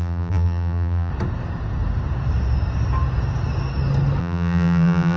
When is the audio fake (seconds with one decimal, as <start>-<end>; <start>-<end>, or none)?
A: 0.0-1.1; 4.2-5.2